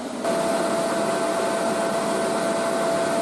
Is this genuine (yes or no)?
yes